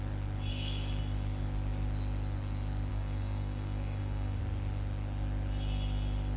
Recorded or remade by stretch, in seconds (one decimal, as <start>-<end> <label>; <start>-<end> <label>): 0.0-0.5 recorded; 0.5-1.0 remade; 1.0-2.9 recorded; 2.9-4.4 remade; 4.4-6.4 recorded